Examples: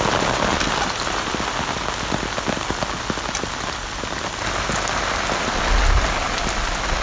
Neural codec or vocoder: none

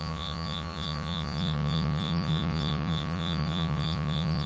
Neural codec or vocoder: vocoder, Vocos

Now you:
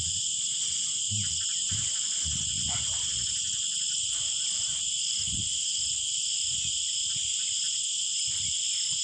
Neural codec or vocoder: none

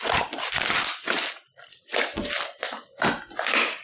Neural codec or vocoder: none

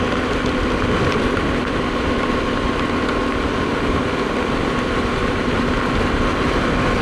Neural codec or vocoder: none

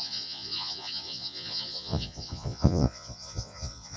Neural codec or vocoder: vocoder, Vocos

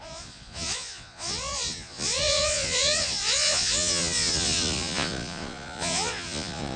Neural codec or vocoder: vocoder, Vocos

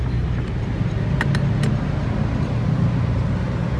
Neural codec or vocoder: none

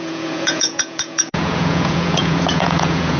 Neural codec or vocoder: vocoder, Vocos